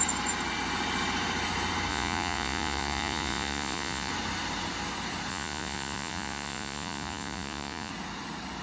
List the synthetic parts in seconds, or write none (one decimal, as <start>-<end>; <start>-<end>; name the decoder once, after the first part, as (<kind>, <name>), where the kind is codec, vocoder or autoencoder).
1.9-4.1 (vocoder, Vocos); 5.3-7.9